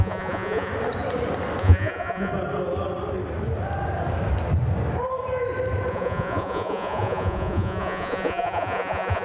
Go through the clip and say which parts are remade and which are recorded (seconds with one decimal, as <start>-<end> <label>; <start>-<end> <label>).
0.0-0.7 remade; 0.7-1.6 recorded; 1.6-2.3 remade; 2.3-5.9 recorded; 5.9-9.2 remade